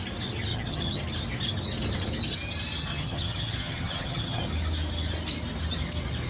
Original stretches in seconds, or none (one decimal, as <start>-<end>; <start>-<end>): 0.0-0.5; 1.0-2.9; 4.5-6.3